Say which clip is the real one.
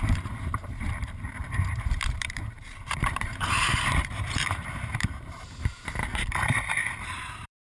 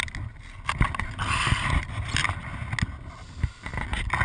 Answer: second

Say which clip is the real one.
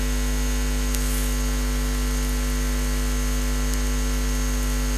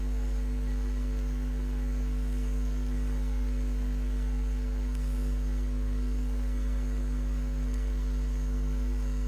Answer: first